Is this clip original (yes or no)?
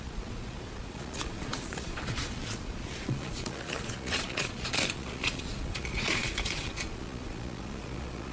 no